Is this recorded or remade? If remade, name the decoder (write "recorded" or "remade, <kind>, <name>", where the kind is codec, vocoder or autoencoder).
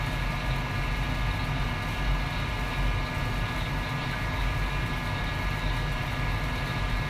recorded